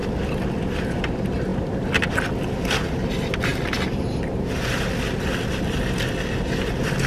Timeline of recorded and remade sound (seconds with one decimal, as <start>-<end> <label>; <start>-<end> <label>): 0.0-1.0 remade; 1.0-1.5 recorded; 1.5-2.2 remade; 2.2-7.1 recorded